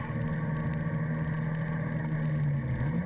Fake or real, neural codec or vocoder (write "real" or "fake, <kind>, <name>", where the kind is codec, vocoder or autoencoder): real